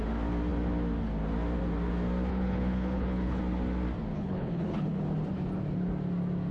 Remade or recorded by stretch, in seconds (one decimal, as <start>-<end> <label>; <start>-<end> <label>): 0.0-2.3 recorded; 2.3-3.4 remade; 3.4-4.1 recorded; 4.1-5.0 remade; 5.0-6.5 recorded